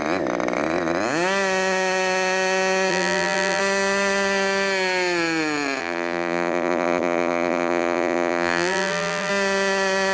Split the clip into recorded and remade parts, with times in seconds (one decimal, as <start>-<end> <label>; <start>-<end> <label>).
0.0-2.9 recorded; 2.9-3.6 remade; 3.6-5.8 recorded; 5.8-9.3 remade; 9.3-10.1 recorded